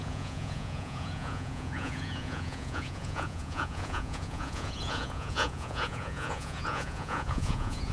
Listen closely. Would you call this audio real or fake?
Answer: fake